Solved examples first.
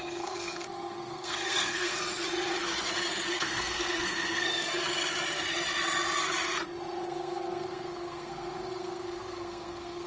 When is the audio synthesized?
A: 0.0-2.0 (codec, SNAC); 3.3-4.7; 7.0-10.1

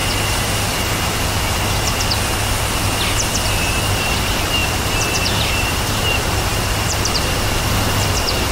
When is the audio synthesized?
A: 4.0-8.5 (vocoder, BigVGAN v2)

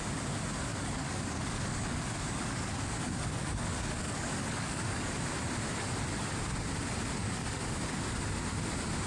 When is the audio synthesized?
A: 0.7-5.1 (codec, DAC); 7.2-7.8

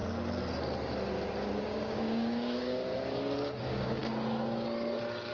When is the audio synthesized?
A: 1.6-2.9 (codec, DAC); 3.6-4.0

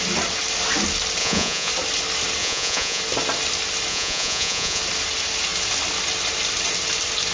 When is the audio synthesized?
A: 1.2-1.7 (vocoder, Vocos); 2.4-3.0; 3.9-4.8

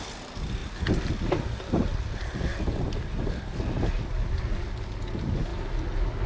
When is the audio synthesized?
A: none